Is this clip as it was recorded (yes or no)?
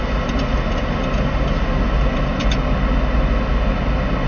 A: yes